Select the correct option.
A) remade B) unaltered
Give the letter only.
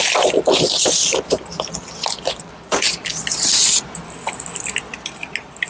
B